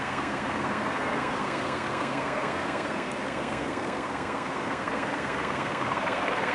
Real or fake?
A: fake